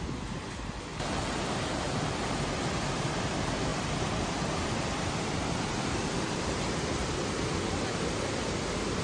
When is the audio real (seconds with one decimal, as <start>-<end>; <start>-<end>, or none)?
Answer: 0.0-0.9; 2.3-6.0; 7.0-9.0